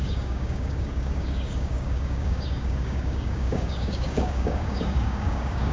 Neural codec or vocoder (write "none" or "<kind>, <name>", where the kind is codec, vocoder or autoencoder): codec, DAC